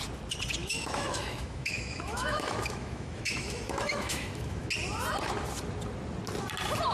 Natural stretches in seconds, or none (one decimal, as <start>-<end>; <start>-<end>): 0.0-0.6; 4.7-6.9